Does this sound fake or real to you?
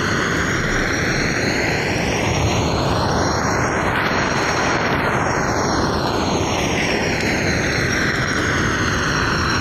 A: real